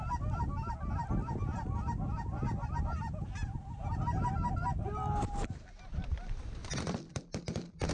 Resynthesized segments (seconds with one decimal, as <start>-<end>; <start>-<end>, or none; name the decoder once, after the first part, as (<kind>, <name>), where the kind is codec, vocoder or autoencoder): 6.6-7.4 (vocoder, BigVGAN v2)